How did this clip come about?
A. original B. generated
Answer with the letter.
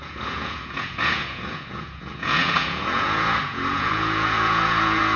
B